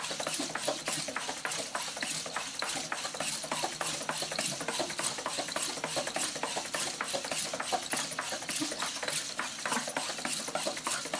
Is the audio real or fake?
real